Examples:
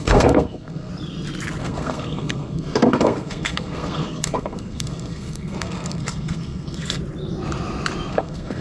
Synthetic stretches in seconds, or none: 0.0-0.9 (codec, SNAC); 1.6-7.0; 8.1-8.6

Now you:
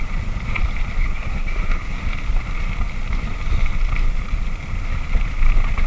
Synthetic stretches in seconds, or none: 1.0-2.0 (codec, SNAC)

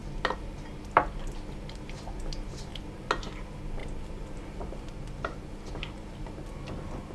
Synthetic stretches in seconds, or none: 3.8-5.7 (vocoder, BigVGAN v2)

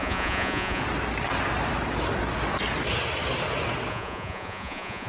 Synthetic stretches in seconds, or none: 0.0-0.8 (vocoder, Vocos); 3.9-5.1

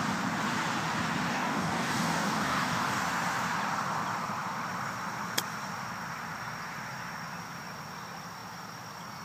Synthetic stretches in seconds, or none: 1.3-3.0 (codec, DAC)

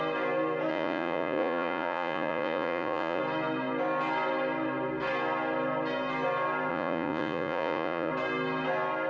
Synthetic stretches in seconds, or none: 0.7-3.2 (vocoder, Vocos); 6.7-8.1